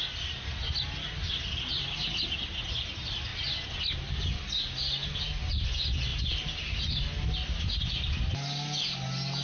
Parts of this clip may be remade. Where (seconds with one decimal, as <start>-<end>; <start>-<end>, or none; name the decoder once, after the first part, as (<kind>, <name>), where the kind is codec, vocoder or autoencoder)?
none